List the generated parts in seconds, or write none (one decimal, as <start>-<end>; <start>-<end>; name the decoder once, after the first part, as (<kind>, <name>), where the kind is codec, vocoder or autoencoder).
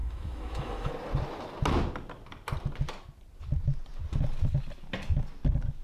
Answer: 0.0-0.9 (autoencoder, DAC-VAE)